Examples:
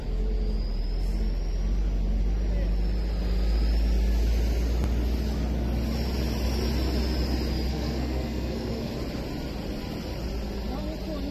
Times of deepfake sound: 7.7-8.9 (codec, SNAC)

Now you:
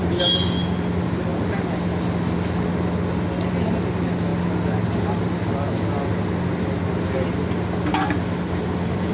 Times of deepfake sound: none

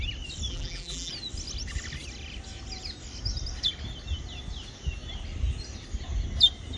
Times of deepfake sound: 0.5-1.1 (vocoder, BigVGAN v2)

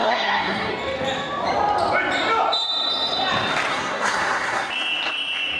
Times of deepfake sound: 0.0-0.7 (codec, SNAC); 3.7-4.7

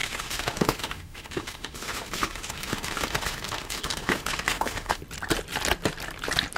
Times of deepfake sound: 0.0-5.0 (autoencoder, DAC-VAE)

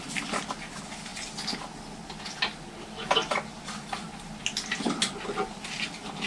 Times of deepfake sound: none

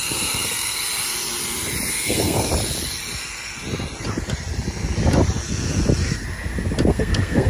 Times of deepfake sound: 0.0-0.8 (codec, SNAC); 1.9-2.5; 6.9-7.5

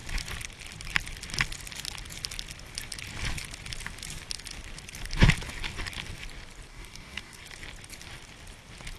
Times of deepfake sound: 6.7-7.4 (codec, DAC)